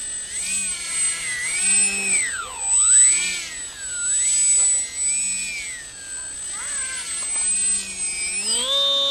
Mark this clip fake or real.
real